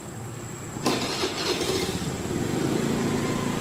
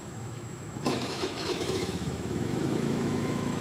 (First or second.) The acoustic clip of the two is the first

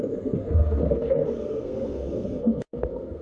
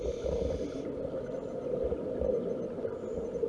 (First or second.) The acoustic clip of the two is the second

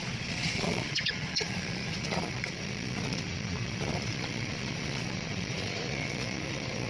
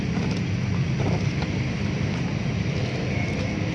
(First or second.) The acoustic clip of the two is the second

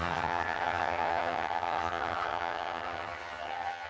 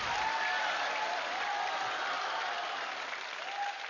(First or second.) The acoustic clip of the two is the second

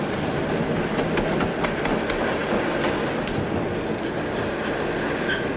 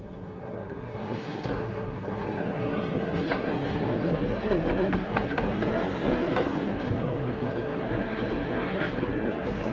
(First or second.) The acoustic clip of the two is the first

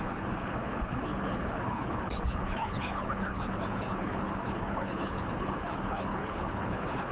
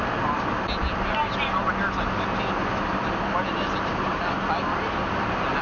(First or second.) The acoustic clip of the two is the second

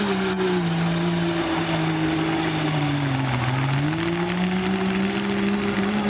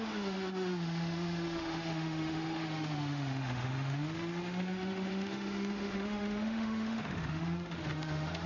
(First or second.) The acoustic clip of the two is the first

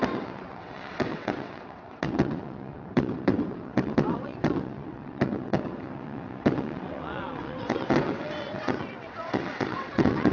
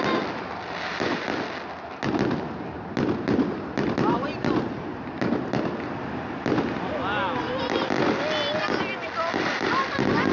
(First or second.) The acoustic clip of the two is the second